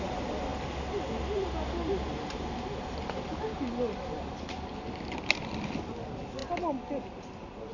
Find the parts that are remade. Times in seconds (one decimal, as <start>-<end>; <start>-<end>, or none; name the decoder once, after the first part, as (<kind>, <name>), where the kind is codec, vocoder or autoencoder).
none